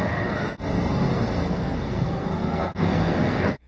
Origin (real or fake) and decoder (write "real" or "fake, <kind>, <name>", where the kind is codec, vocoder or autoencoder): fake, codec, SNAC